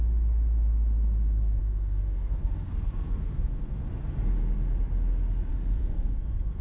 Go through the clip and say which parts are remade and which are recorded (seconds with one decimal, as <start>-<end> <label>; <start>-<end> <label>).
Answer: 0.0-1.6 recorded; 1.6-3.9 remade; 3.9-5.5 recorded; 5.5-6.6 remade

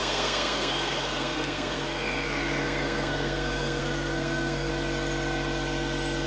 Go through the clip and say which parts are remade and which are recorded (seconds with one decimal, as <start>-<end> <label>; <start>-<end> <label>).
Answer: 0.0-4.7 remade; 4.7-6.3 recorded

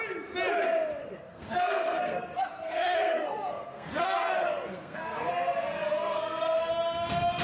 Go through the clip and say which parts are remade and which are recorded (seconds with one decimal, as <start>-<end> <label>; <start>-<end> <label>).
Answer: 0.0-1.0 recorded; 1.0-5.3 remade; 5.3-5.8 recorded; 5.8-6.7 remade; 6.7-7.4 recorded